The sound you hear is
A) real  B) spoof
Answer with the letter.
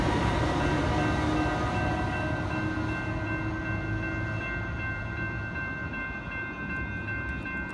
A